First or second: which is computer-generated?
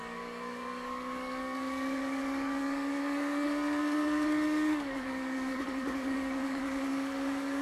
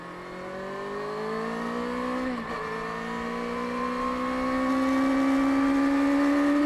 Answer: first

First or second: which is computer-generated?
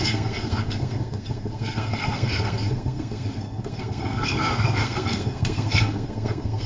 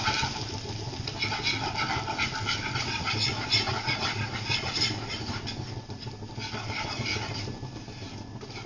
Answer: first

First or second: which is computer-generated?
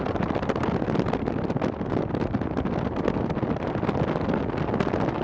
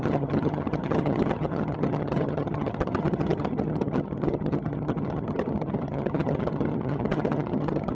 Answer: second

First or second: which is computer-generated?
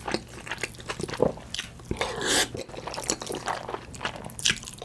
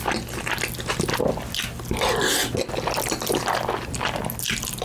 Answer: first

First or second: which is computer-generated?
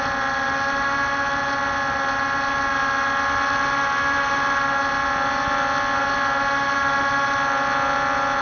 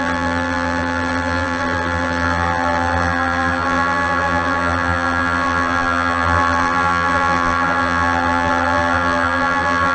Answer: second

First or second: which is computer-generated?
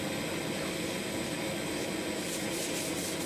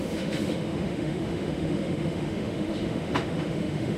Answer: second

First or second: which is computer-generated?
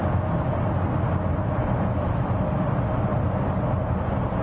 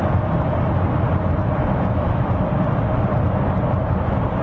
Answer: second